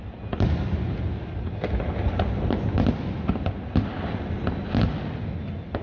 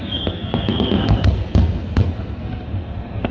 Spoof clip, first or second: second